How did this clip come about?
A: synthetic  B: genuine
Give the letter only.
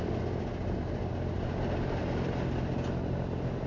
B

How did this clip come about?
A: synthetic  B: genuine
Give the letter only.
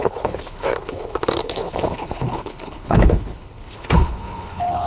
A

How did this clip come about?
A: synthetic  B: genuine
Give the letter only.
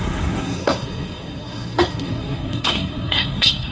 A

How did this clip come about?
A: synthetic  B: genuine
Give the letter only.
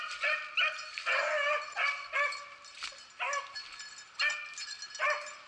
B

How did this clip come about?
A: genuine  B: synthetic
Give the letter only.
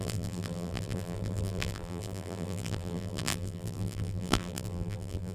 B